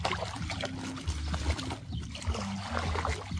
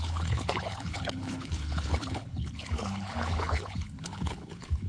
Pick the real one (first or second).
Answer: first